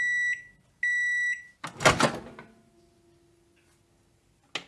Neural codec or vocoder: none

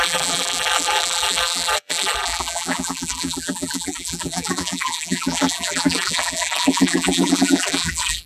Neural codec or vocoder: vocoder, BigVGAN v2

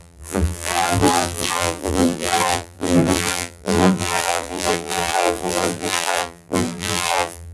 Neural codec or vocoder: vocoder, BigVGAN v2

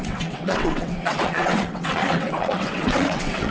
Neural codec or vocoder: vocoder, WaveNeXt